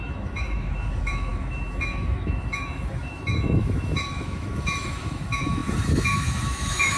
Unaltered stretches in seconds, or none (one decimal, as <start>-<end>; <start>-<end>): none